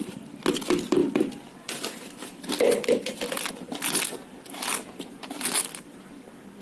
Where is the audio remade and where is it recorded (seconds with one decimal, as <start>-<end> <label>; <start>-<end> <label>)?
0.0-6.6 recorded